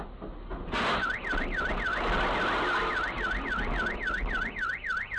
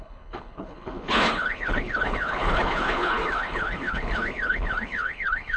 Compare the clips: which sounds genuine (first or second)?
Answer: first